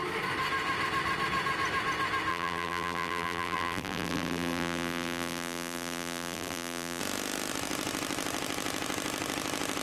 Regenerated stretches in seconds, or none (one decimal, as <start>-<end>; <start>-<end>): 2.3-7.0